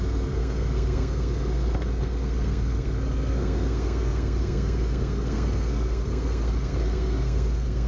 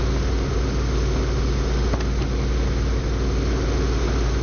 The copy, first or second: first